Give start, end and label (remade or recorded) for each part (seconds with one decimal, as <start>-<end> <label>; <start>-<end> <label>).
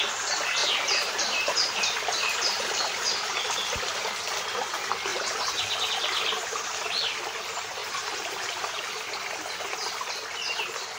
0.0-0.6 recorded; 0.6-4.1 remade; 4.1-7.8 recorded; 7.8-8.8 remade; 8.8-11.0 recorded